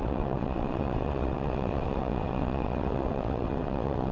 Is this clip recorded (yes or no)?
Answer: no